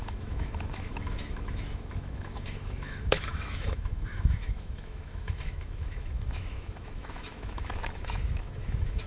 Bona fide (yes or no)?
no